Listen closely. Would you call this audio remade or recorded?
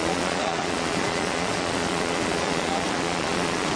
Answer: remade